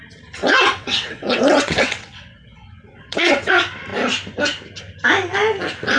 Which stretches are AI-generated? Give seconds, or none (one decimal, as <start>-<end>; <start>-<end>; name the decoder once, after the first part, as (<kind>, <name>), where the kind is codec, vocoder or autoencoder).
0.4-3.5 (vocoder, WaveNeXt)